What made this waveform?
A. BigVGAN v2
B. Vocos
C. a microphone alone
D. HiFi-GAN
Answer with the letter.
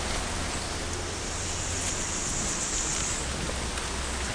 C